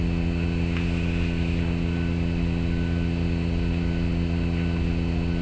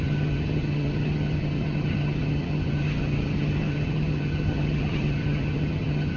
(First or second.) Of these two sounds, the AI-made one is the second